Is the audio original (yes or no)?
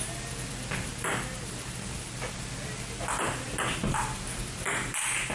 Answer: yes